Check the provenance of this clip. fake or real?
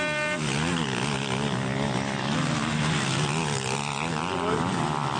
real